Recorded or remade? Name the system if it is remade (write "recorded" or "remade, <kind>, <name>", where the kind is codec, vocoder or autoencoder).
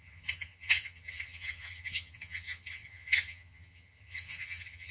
remade, vocoder, HiFi-GAN